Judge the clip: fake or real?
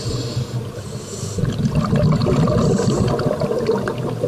real